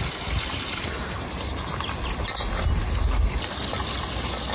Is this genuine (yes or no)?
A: yes